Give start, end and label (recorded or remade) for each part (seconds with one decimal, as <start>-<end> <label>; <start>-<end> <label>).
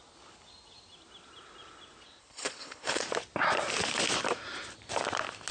0.0-2.2 recorded; 2.2-3.0 remade; 3.0-5.5 recorded